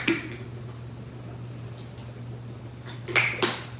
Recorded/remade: recorded